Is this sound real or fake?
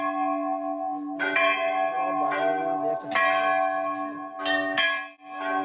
real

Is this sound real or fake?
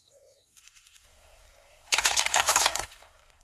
fake